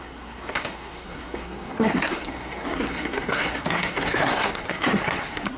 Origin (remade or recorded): remade